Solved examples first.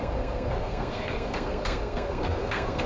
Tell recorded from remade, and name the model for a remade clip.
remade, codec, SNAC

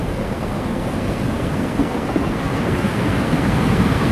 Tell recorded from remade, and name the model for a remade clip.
remade, codec, SNAC